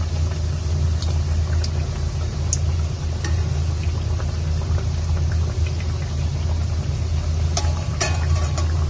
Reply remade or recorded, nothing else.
recorded